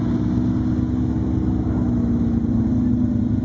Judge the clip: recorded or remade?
recorded